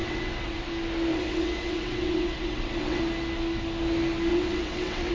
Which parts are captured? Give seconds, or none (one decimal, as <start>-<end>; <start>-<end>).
0.7-1.1; 3.0-4.3